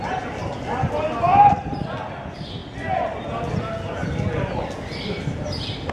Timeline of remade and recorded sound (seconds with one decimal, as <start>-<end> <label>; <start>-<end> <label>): 0.0-5.9 recorded